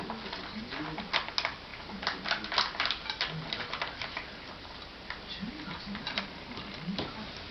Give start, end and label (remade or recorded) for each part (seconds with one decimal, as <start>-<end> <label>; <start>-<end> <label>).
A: 0.0-7.5 recorded